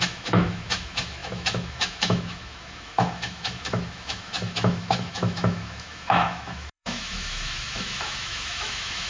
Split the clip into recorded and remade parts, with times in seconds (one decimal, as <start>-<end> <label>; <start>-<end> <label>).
0.0-9.1 remade